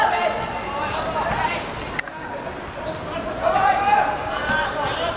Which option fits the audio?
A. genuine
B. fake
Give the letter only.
A